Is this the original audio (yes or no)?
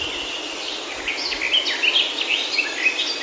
yes